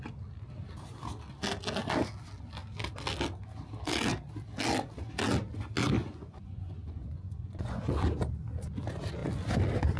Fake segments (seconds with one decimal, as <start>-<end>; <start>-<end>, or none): 6.0-7.9